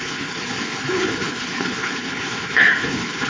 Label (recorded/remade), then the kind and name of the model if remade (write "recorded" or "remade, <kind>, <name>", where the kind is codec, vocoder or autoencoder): remade, codec, HILCodec